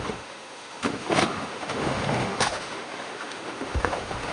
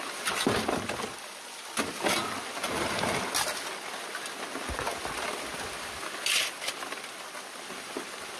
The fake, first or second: first